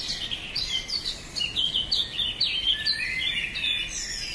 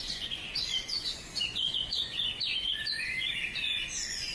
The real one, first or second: first